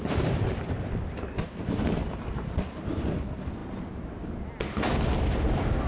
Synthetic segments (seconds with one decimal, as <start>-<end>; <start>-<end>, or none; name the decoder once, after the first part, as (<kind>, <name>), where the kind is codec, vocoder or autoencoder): none